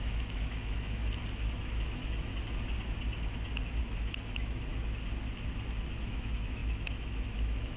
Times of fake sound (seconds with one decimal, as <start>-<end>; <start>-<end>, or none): 0.0-1.0; 1.6-2.3; 3.8-4.7; 5.9-7.8